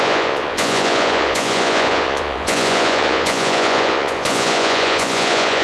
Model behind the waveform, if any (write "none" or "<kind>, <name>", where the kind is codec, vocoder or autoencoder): vocoder, Vocos